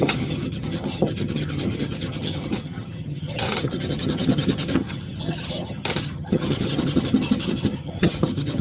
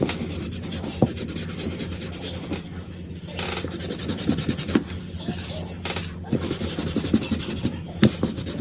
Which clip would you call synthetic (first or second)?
first